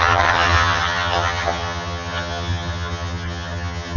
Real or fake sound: fake